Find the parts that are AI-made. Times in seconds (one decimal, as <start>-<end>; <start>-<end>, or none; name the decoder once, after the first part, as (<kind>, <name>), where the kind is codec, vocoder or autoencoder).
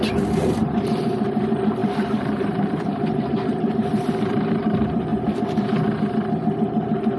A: 0.0-5.1 (vocoder, BigVGAN v2)